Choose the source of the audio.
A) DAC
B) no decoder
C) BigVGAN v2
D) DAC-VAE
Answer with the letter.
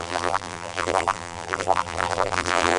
C